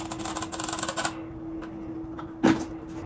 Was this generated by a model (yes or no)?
no